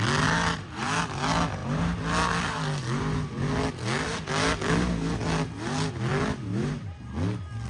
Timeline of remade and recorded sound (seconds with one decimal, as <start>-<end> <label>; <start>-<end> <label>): 0.0-7.7 recorded